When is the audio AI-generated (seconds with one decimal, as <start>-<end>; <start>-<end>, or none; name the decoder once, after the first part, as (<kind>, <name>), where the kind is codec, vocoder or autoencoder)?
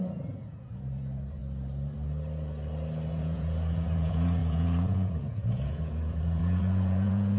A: 0.0-1.4 (vocoder, Vocos); 3.1-7.4